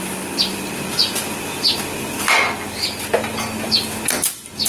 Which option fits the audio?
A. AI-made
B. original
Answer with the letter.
B